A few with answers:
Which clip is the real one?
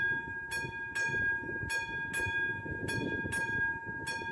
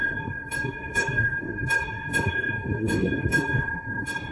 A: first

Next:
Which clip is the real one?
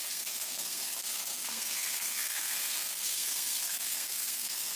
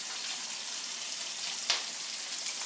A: second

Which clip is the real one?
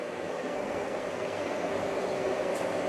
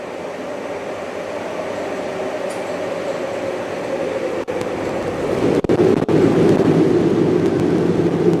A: second